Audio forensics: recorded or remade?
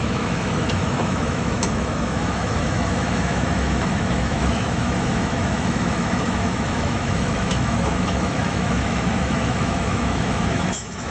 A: remade